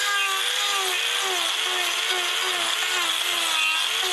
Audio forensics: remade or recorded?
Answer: recorded